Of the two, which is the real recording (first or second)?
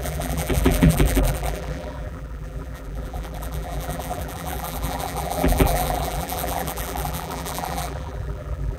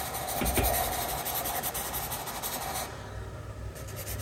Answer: second